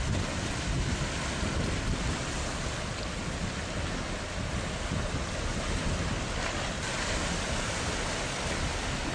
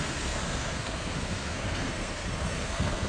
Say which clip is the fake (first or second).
second